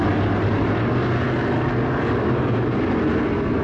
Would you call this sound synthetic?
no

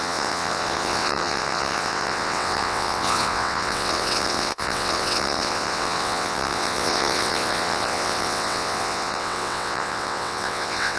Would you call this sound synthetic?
yes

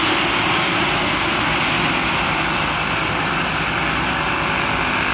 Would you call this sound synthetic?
no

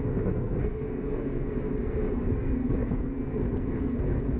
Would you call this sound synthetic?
yes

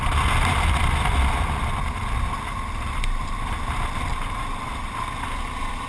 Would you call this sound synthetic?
no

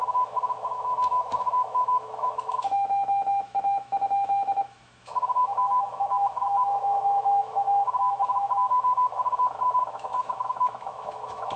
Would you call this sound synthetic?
yes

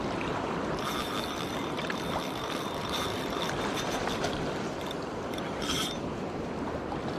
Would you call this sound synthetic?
yes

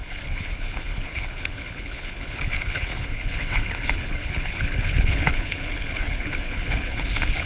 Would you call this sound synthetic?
yes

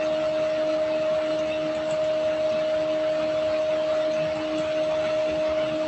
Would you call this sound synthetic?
no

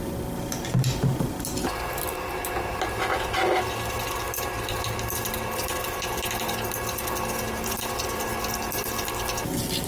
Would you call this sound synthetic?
no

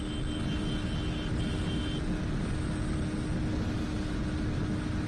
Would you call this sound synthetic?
no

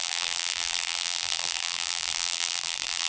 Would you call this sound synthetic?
yes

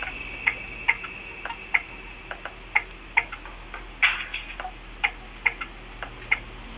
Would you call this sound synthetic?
no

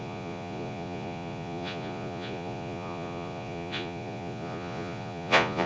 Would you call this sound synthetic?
yes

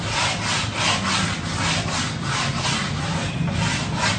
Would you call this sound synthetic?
no